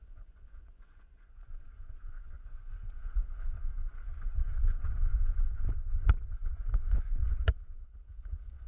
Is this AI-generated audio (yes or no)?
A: yes